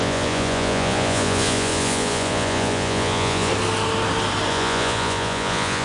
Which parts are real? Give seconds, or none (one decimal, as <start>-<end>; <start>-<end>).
3.5-4.5